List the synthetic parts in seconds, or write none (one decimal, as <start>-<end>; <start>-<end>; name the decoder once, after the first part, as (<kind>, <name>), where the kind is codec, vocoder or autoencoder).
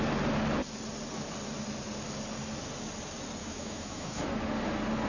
3.4-4.3 (autoencoder, DAC-VAE)